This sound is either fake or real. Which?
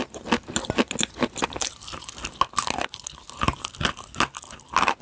real